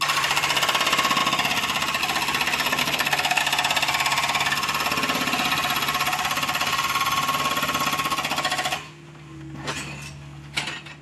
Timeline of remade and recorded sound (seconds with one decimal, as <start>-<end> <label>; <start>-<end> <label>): 0.0-2.8 recorded; 2.8-3.4 remade; 3.4-11.0 recorded